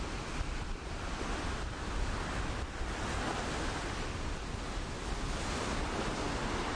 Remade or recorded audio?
recorded